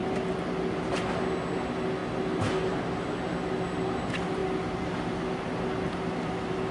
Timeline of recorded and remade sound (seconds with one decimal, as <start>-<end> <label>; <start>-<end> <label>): 0.0-6.7 recorded